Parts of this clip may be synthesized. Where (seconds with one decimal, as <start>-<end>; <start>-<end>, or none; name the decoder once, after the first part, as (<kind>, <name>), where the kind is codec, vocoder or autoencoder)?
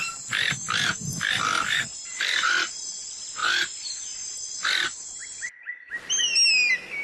1.9-2.7 (vocoder, BigVGAN v2); 5.2-6.2